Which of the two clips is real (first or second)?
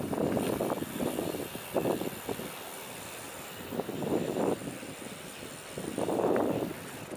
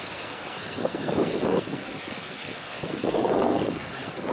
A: first